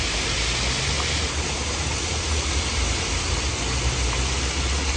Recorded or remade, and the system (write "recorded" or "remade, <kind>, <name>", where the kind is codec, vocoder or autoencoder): recorded